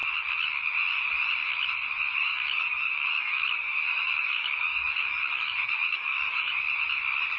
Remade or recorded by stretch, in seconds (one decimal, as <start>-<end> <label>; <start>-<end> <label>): 0.0-2.1 recorded; 2.1-6.5 remade; 6.5-7.4 recorded